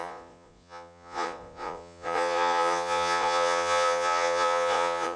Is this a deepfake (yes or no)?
yes